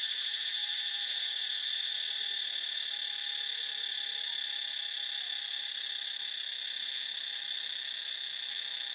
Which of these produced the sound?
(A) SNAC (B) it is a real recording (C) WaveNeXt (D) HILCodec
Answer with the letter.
B